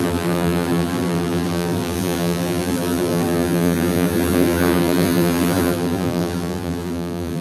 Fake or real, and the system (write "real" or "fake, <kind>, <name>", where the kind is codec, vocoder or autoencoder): fake, vocoder, BigVGAN v2